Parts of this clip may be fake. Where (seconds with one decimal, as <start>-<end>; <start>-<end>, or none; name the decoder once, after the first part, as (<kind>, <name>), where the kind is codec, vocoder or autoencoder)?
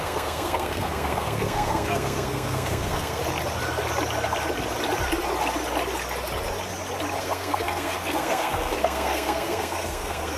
0.0-3.2 (codec, SNAC); 7.2-10.4